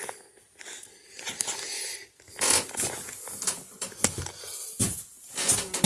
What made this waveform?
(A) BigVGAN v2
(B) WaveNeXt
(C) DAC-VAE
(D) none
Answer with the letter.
D